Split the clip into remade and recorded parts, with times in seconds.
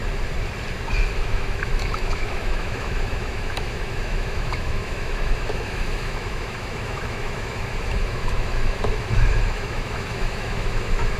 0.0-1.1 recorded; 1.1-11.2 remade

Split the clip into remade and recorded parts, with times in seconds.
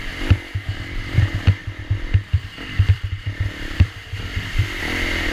0.0-1.6 recorded; 1.6-4.8 remade; 4.8-5.3 recorded